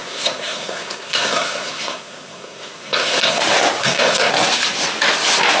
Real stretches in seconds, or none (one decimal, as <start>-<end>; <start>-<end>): 3.4-3.8; 4.3-5.6

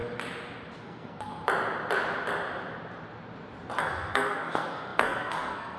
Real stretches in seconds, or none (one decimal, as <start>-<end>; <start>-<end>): 0.0-0.8; 1.3-3.8

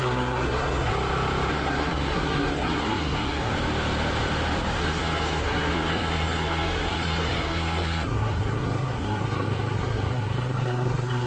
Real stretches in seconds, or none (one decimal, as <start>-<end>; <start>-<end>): 0.9-1.5; 3.5-4.8

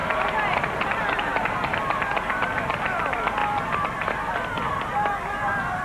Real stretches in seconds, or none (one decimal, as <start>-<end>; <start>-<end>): 0.0-5.8